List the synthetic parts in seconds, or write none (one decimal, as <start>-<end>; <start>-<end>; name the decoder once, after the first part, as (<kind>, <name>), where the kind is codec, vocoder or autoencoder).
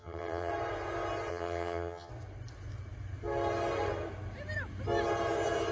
0.0-0.5 (vocoder, HiFi-GAN); 1.3-2.1